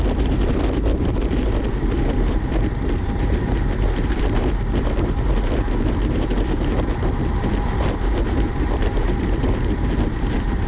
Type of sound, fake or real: fake